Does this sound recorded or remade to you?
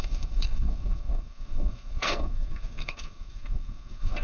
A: remade